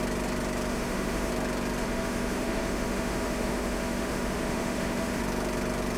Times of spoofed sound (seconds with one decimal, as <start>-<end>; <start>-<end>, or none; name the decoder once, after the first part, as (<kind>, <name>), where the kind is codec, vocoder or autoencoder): 0.7-1.3 (autoencoder, DAC-VAE); 1.8-5.2